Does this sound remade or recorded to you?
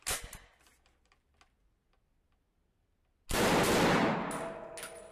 recorded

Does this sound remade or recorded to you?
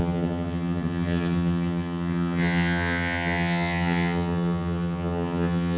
remade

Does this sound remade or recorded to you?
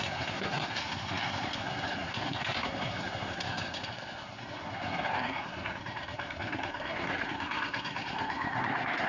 remade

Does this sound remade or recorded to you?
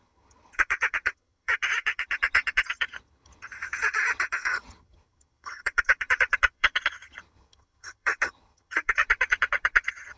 remade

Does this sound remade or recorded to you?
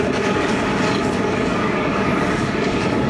remade